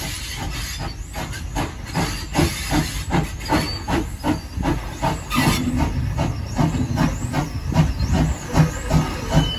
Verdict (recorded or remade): recorded